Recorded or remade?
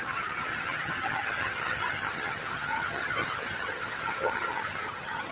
remade